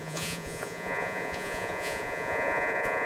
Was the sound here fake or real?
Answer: fake